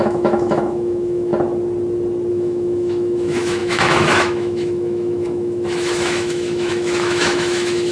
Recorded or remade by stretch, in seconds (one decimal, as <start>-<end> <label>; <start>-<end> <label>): 0.0-1.3 remade; 1.3-2.3 recorded; 2.3-7.9 remade